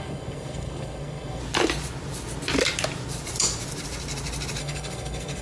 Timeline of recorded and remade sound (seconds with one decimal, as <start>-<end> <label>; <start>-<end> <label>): 0.0-1.4 remade; 1.4-4.6 recorded; 4.6-5.4 remade